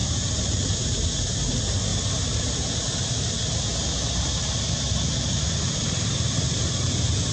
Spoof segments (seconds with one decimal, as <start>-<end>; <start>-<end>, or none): 0.0-1.5; 1.9-2.5; 3.7-6.6